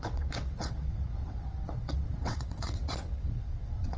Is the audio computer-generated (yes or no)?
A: yes